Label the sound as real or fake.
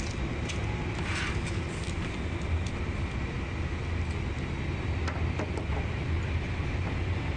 real